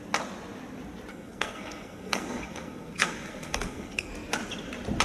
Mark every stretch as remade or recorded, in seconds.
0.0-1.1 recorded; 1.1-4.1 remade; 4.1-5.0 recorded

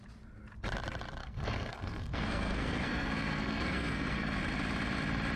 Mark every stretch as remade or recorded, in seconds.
0.0-1.2 recorded; 1.2-4.4 remade; 4.4-5.4 recorded

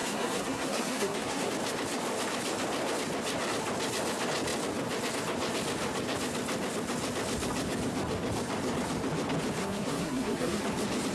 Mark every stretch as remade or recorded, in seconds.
0.0-1.5 remade; 1.5-9.6 recorded; 9.6-10.6 remade; 10.6-11.1 recorded